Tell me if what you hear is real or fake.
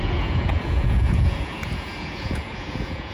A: fake